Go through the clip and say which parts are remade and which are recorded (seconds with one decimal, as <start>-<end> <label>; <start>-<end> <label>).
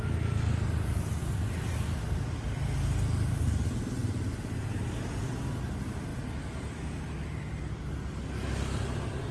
0.0-9.3 recorded